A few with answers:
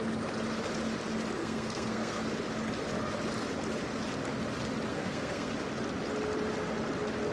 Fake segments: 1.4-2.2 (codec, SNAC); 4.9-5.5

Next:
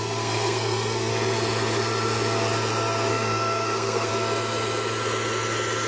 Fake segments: 0.0-1.1 (codec, SNAC); 3.1-4.1

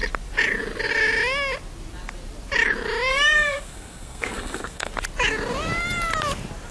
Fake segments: 3.1-4.9 (codec, SNAC)

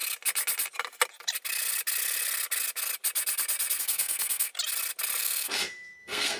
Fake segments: 3.8-4.5 (codec, SNAC); 5.2-6.4

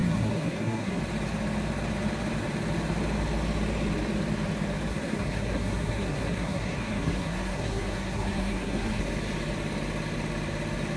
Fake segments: 0.0-1.0 (codec, SNAC); 4.9-9.0